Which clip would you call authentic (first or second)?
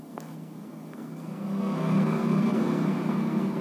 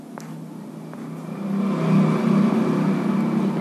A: second